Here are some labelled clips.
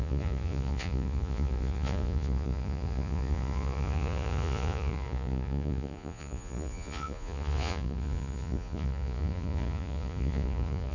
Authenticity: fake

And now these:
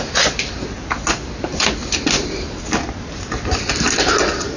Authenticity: real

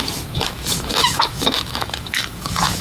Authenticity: fake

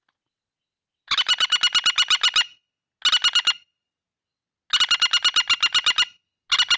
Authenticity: real